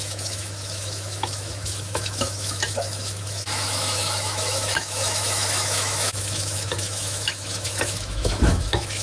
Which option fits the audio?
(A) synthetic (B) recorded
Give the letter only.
A